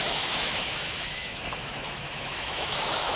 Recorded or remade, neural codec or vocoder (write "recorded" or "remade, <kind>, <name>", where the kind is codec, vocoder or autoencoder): remade, autoencoder, DAC-VAE